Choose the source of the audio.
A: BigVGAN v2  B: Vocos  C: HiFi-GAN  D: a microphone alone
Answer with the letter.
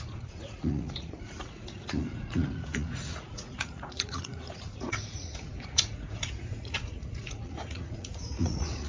B